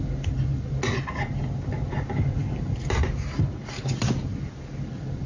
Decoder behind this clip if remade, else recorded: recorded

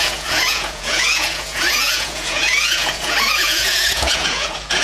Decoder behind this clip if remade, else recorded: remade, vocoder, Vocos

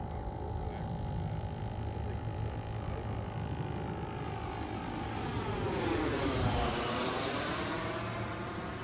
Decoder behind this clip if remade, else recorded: recorded